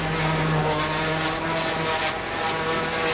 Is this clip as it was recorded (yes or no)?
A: yes